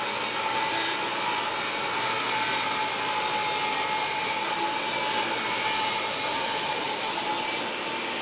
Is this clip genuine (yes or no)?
yes